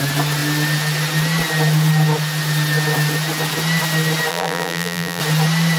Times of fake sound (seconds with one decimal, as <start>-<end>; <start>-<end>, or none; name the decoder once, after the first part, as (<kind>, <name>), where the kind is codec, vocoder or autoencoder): 4.3-5.2 (vocoder, BigVGAN v2)